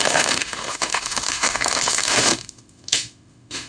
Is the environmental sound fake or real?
fake